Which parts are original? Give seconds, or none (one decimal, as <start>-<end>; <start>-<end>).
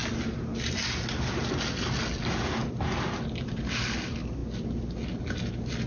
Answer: 0.0-5.9